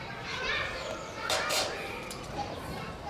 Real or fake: fake